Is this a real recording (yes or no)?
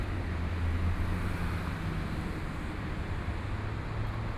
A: yes